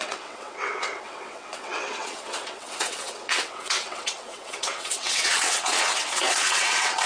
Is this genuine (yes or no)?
no